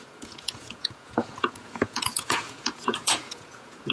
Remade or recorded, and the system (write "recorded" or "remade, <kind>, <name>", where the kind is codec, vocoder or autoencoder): remade, vocoder, Vocos